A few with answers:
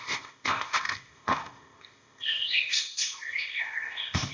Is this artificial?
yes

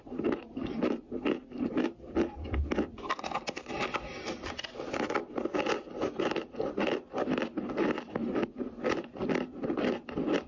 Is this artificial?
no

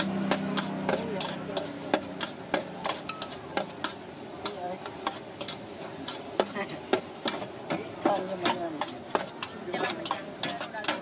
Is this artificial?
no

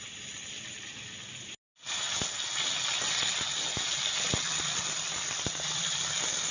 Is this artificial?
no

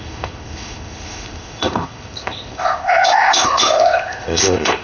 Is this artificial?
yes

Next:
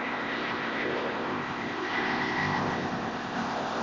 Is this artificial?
yes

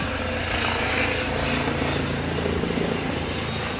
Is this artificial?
no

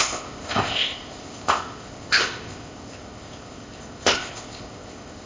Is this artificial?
yes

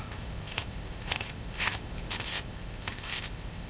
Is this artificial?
yes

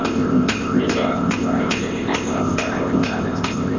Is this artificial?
yes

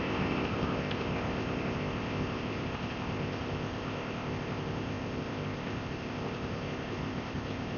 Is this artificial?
yes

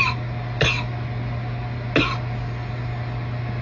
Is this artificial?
no